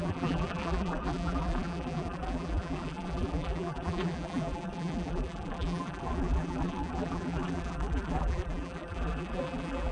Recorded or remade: remade